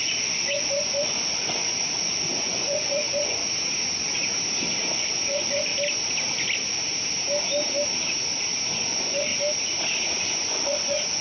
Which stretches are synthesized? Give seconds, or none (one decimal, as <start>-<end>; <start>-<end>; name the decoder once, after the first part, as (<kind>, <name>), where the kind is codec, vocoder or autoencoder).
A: 0.0-3.4 (vocoder, Vocos); 4.9-5.7; 8.7-9.3; 10.2-11.2